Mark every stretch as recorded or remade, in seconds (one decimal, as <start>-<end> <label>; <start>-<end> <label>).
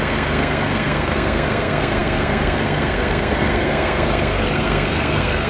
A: 0.0-5.5 remade